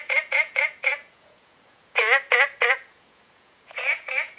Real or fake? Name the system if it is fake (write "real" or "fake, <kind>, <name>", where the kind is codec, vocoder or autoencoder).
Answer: fake, vocoder, Vocos